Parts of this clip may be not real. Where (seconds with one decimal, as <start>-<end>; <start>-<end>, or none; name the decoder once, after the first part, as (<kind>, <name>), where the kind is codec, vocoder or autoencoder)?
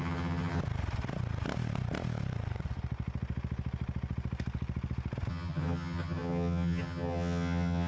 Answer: 0.0-0.6 (vocoder, HiFi-GAN); 5.3-7.9